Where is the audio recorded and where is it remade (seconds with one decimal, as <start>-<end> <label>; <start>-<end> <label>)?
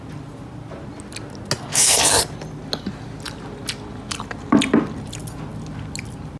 0.0-1.7 recorded; 1.7-2.2 remade; 2.2-6.4 recorded